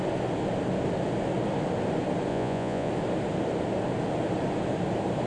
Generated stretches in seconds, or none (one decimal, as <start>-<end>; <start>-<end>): 2.3-2.9

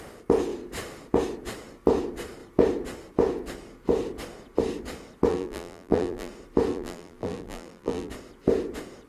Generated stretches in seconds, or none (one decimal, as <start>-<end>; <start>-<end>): 5.3-6.3; 6.7-8.1